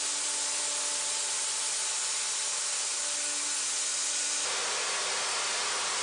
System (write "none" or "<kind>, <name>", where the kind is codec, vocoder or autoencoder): none